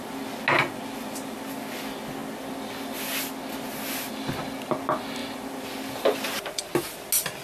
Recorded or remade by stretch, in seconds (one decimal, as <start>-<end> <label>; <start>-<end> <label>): 0.0-5.2 recorded; 5.2-6.6 remade; 6.6-7.4 recorded